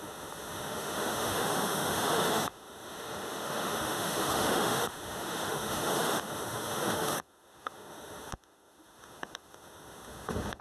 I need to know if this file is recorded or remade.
remade